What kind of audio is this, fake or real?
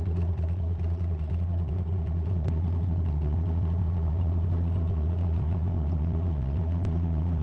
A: fake